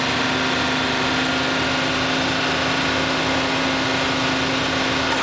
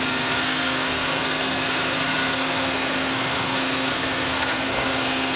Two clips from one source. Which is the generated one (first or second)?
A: second